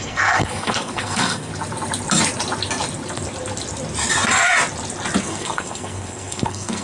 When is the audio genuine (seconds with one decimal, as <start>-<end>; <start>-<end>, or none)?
1.5-5.2